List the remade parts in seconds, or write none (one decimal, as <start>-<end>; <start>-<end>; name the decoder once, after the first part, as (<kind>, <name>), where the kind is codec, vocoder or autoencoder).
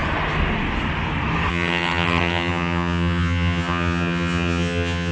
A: 1.5-5.1 (vocoder, HiFi-GAN)